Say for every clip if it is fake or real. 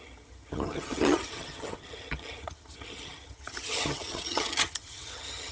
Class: fake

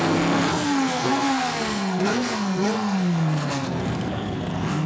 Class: fake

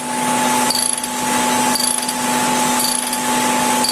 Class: real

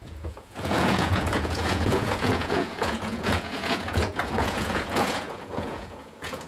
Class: fake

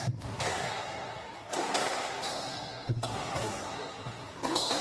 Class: fake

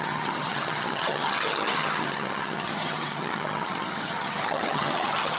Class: fake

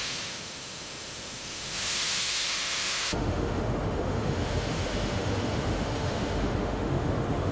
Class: fake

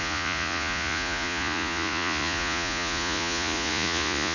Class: fake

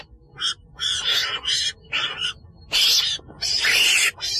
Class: real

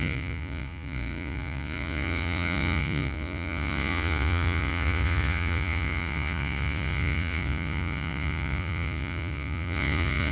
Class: fake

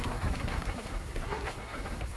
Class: fake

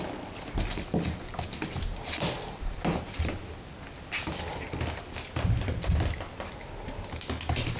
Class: real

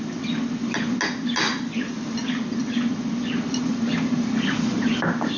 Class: real